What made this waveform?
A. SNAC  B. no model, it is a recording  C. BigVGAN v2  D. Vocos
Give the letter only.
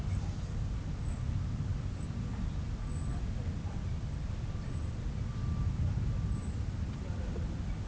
B